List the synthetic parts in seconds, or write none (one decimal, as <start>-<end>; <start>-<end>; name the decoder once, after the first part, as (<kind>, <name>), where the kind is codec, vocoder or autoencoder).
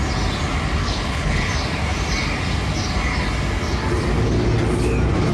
0.8-1.5 (codec, HILCodec)